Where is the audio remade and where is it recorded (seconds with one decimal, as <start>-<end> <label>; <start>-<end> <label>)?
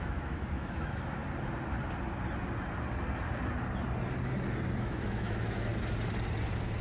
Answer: 0.0-1.2 remade; 1.2-4.8 recorded; 4.8-5.7 remade; 5.7-6.8 recorded